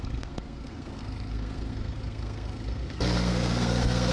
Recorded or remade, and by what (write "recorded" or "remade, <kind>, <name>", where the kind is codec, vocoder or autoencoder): remade, codec, SNAC